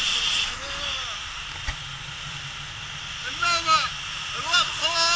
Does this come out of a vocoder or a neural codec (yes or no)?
no